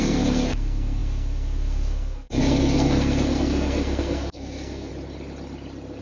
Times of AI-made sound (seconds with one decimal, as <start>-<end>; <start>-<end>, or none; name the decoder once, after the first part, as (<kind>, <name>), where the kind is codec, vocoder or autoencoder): 0.0-4.9 (codec, SNAC)